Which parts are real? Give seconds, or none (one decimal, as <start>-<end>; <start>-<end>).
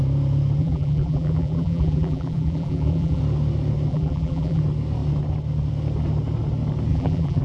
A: 0.0-0.6; 3.2-3.9; 4.6-6.9